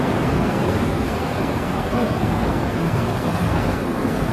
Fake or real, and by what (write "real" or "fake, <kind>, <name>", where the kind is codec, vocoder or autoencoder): fake, codec, SNAC